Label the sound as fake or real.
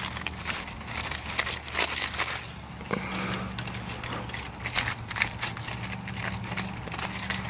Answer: real